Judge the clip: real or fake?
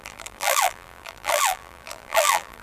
fake